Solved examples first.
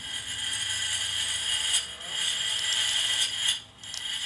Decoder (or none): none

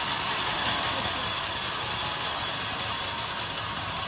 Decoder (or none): none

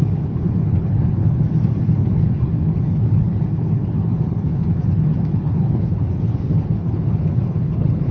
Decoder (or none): codec, HILCodec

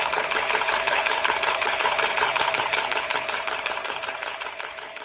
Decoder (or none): codec, HILCodec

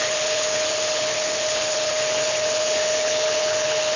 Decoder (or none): codec, HILCodec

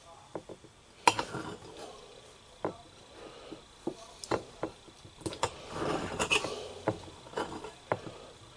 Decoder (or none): none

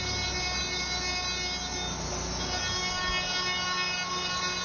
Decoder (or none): none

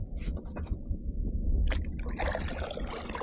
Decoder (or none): none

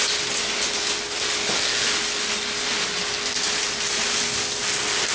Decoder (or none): none